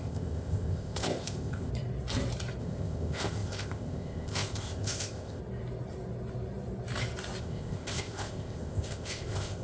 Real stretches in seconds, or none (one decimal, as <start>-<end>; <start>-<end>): 1.7-2.6; 5.4-7.4